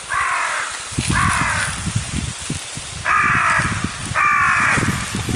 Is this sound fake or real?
real